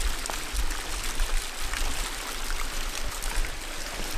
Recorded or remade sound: recorded